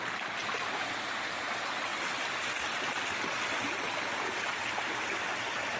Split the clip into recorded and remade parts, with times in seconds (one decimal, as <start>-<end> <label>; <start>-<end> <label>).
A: 0.0-5.8 recorded